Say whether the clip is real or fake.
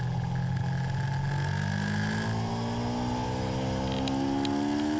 real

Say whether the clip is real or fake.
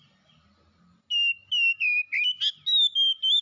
real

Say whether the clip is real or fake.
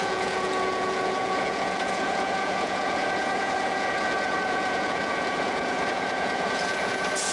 fake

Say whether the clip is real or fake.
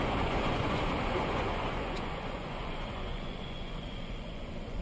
fake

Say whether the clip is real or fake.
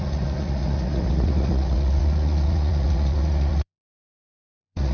fake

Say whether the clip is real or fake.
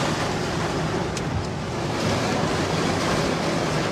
real